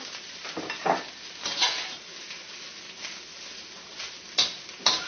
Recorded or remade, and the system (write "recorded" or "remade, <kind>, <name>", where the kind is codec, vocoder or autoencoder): recorded